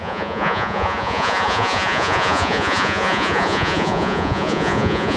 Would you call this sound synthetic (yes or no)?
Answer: yes